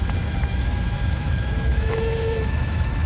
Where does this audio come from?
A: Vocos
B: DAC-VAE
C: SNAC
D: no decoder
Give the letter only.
B